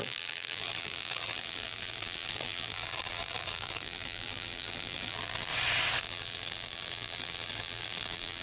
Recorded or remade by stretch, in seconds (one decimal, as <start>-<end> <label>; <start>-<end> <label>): 0.0-5.5 remade; 5.5-6.0 recorded; 6.0-8.4 remade